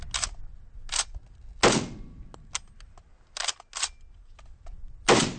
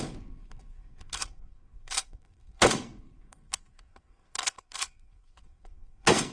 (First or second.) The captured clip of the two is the first